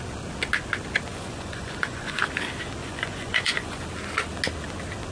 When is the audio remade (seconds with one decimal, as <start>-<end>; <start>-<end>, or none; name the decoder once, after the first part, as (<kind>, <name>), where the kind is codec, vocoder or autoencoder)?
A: 1.1-2.2 (vocoder, Vocos); 2.8-3.8